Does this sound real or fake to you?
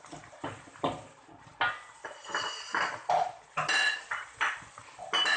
real